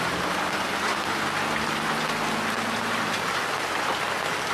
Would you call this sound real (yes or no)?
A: yes